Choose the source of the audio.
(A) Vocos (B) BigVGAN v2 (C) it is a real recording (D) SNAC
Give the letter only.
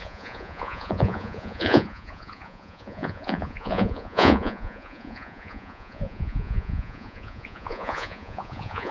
A